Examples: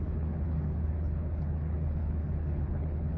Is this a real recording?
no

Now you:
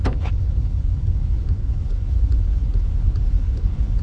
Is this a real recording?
no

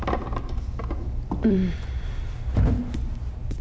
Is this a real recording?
yes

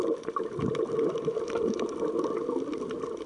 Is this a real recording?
yes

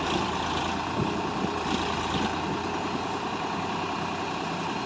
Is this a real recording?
yes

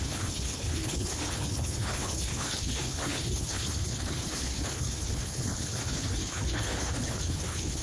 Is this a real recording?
no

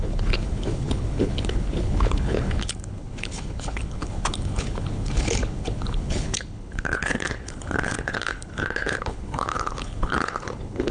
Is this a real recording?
no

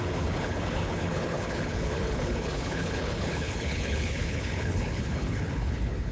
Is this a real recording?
no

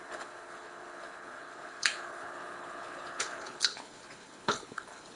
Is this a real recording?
no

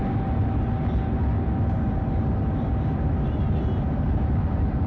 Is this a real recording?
yes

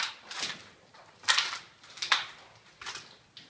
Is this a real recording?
yes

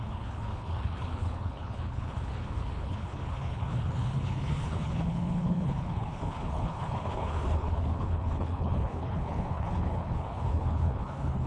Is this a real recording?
no